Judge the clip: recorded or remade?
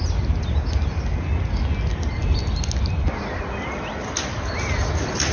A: recorded